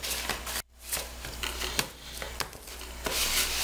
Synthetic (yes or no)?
no